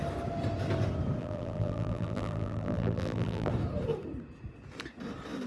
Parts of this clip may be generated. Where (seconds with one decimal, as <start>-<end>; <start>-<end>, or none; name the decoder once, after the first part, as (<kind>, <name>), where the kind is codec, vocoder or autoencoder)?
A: 1.2-3.5 (vocoder, BigVGAN v2)